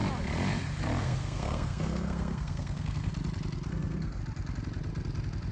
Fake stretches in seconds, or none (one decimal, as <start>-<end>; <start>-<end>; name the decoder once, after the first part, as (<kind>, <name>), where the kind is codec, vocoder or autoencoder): 1.0-3.1 (codec, SNAC); 3.7-4.2